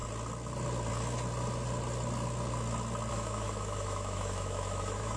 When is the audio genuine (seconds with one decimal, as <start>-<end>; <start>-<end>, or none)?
0.0-3.1